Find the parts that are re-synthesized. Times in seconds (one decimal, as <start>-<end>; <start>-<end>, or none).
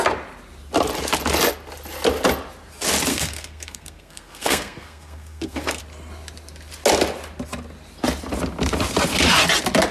3.1-5.8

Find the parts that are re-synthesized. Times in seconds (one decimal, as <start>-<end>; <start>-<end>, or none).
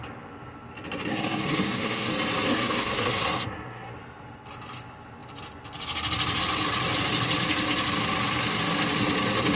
1.1-2.1; 2.5-3.9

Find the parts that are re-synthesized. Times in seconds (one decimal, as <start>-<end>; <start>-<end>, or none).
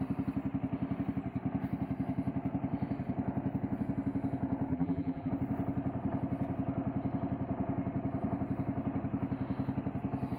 4.7-5.3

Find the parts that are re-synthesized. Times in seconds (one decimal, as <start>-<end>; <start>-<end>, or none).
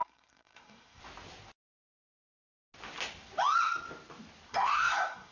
0.0-1.0; 4.5-5.3